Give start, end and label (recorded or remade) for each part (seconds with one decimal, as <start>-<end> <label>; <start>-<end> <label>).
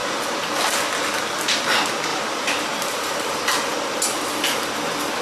0.0-0.8 remade; 0.8-2.1 recorded; 2.1-4.0 remade; 4.0-5.2 recorded